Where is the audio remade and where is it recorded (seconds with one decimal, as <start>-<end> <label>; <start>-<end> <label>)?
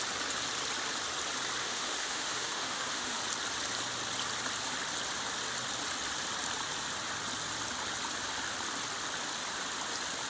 0.0-1.6 recorded; 1.6-3.2 remade; 3.2-10.3 recorded